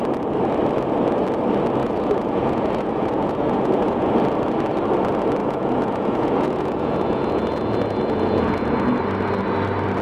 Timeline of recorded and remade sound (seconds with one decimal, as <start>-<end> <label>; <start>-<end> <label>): 0.0-1.8 recorded; 1.8-4.1 remade; 4.1-5.4 recorded; 5.4-8.9 remade; 8.9-10.0 recorded